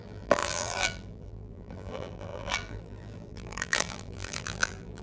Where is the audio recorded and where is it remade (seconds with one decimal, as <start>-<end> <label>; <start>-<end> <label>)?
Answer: 0.0-5.0 remade